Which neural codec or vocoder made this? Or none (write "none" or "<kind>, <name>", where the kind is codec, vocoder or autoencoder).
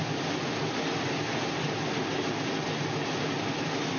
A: none